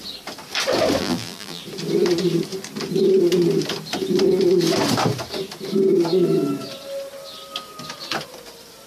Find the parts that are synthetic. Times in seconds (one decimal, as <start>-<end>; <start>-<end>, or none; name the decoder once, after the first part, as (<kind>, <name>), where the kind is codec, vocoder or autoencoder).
1.0-1.6 (vocoder, BigVGAN v2)

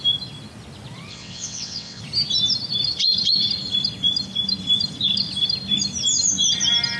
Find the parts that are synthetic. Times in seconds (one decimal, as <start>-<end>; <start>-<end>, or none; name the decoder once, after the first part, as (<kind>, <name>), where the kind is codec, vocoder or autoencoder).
1.1-2.0 (vocoder, WaveNeXt)

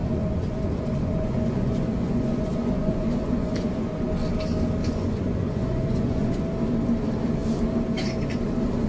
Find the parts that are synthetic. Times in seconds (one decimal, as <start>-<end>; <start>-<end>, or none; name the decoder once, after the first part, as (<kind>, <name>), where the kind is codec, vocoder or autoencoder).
0.0-3.9 (vocoder, Vocos); 4.8-6.4

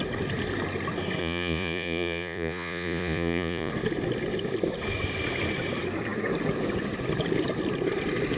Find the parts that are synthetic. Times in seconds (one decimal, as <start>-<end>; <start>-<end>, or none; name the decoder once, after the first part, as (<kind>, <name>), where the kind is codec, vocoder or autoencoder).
1.2-3.7 (vocoder, Vocos)

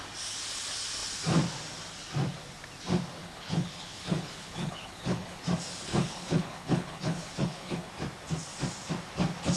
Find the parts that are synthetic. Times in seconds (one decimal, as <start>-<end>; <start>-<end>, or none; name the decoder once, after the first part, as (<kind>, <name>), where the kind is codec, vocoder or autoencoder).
3.2-5.4 (codec, HILCodec); 5.9-7.9

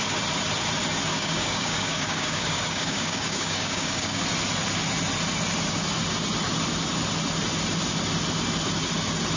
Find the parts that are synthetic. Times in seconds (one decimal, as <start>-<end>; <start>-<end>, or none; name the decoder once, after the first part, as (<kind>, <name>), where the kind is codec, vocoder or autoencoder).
1.1-4.2 (codec, DAC)